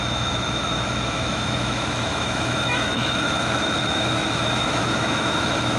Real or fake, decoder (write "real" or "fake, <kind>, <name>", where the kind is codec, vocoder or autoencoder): fake, autoencoder, DAC-VAE